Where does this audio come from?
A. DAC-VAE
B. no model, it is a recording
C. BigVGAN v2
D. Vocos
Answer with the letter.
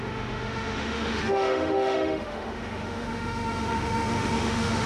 A